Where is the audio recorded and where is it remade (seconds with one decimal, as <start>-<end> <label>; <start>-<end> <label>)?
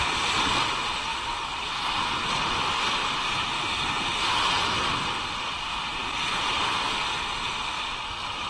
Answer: 0.0-8.5 recorded